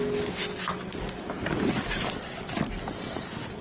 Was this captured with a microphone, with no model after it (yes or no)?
yes